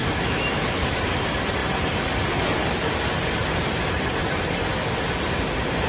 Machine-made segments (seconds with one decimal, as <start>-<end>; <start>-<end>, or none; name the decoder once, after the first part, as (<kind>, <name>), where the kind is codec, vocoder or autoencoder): 0.0-1.0 (autoencoder, DAC-VAE)